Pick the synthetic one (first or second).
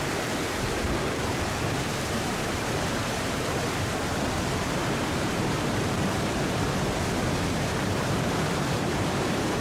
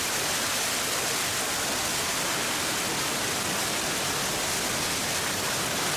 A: first